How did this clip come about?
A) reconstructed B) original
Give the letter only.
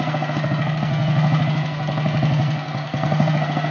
A